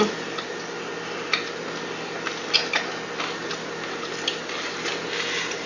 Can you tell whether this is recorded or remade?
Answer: recorded